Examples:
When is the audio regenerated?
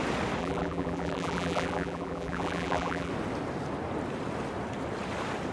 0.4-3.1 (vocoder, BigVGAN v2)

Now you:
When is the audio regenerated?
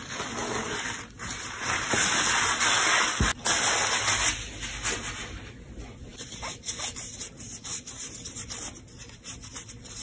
0.0-0.4 (vocoder, BigVGAN v2); 4.6-10.0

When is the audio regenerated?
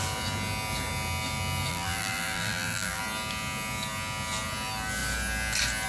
1.7-3.0 (vocoder, BigVGAN v2)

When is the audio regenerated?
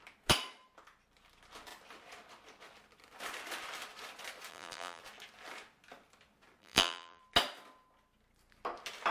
4.5-5.0 (vocoder, BigVGAN v2); 6.6-7.2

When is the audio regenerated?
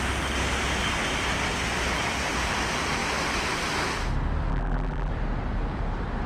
4.5-5.1 (vocoder, BigVGAN v2)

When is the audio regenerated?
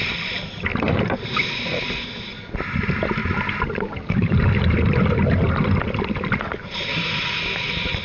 0.7-1.2 (vocoder, BigVGAN v2); 3.2-4.3